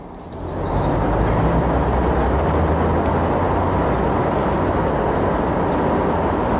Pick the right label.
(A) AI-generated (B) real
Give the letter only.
B